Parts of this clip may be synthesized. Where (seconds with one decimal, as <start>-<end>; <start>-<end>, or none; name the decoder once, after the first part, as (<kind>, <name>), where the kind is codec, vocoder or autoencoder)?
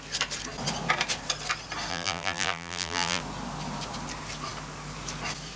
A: 1.9-3.2 (vocoder, BigVGAN v2)